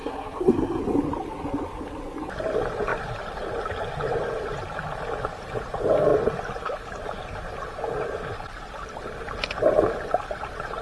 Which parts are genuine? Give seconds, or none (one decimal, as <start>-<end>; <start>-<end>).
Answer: 0.8-10.8

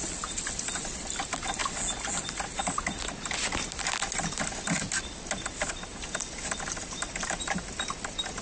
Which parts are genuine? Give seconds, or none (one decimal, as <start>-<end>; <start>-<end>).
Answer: 0.0-8.4

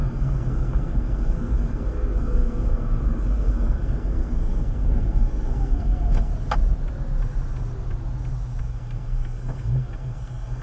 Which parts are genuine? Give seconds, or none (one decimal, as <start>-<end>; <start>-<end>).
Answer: 6.3-8.6